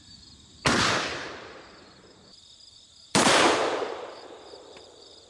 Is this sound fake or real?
fake